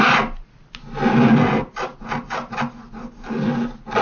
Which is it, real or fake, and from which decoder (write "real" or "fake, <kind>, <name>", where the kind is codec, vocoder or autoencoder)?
real